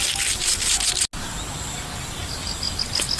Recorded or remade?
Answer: recorded